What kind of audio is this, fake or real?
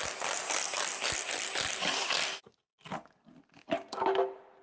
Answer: real